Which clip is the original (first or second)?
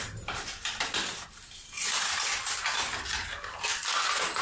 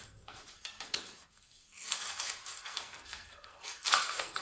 first